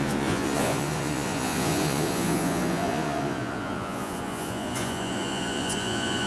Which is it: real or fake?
fake